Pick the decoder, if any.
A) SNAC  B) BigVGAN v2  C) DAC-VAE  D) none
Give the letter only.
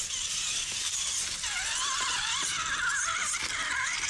B